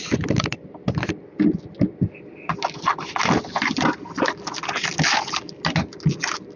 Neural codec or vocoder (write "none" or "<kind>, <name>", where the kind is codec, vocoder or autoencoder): none